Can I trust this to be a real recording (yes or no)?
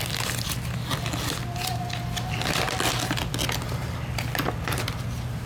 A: yes